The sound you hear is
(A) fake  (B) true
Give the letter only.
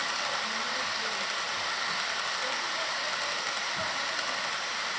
B